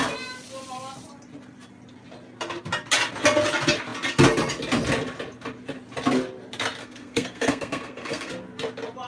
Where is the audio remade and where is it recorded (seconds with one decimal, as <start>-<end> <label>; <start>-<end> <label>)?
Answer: 0.0-6.8 recorded; 6.8-8.3 remade; 8.3-9.1 recorded